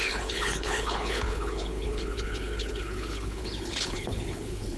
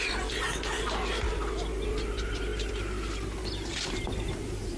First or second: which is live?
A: second